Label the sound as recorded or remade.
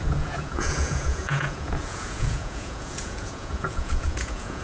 remade